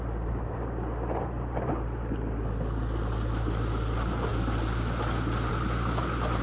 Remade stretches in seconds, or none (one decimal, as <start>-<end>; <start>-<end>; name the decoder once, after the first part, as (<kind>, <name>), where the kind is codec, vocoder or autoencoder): none